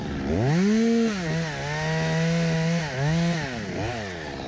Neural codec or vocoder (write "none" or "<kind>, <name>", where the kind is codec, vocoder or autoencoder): none